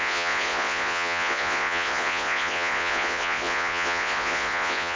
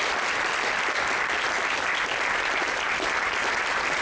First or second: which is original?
second